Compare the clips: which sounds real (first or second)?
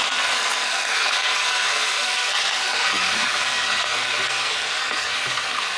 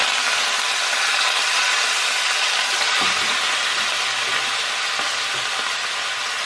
second